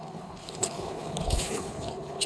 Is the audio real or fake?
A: fake